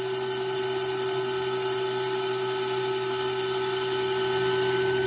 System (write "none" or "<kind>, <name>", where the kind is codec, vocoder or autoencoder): none